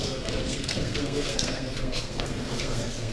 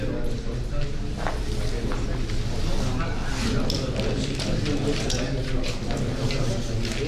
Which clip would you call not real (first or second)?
first